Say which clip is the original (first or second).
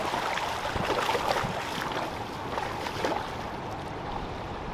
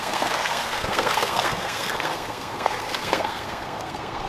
first